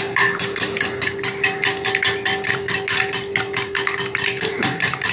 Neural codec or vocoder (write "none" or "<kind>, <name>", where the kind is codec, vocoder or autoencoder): none